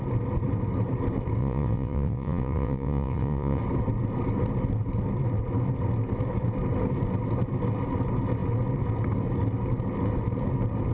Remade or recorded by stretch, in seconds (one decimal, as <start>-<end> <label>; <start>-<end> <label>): 0.0-1.4 recorded; 1.4-3.6 remade; 3.6-10.9 recorded